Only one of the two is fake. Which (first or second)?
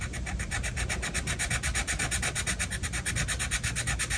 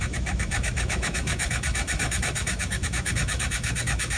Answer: second